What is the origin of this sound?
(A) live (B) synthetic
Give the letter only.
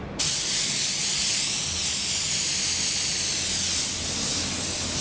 A